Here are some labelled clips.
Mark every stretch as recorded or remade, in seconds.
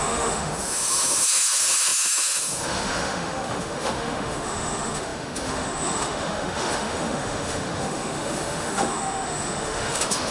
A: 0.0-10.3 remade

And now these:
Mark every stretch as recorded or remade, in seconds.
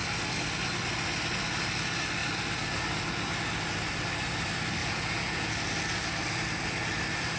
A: 0.0-4.8 recorded; 4.8-5.5 remade; 5.5-7.4 recorded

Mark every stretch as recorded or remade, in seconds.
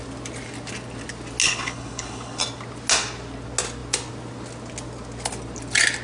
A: 0.0-1.4 recorded; 1.4-2.4 remade; 2.4-6.0 recorded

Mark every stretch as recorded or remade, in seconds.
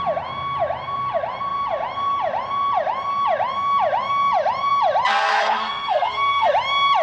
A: 0.0-5.3 recorded; 5.3-6.5 remade; 6.5-7.0 recorded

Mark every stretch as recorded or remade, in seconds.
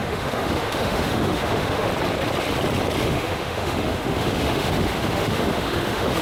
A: 0.0-1.9 remade; 1.9-3.0 recorded; 3.0-6.2 remade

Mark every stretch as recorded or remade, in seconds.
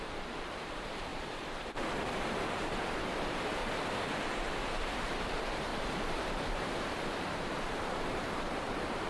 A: 0.0-3.6 remade; 3.6-4.5 recorded; 4.5-9.1 remade